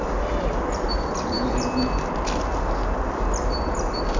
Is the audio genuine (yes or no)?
yes